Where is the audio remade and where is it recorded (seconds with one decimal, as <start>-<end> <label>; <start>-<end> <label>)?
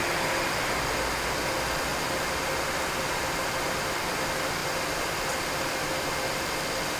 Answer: 0.0-7.0 recorded